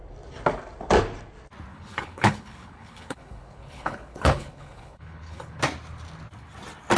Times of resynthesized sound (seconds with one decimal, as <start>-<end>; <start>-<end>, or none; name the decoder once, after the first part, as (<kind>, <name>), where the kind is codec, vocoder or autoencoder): 1.7-5.6 (codec, HILCodec)